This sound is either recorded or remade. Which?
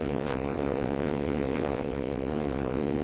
remade